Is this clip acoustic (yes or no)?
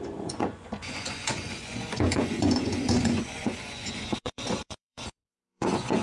no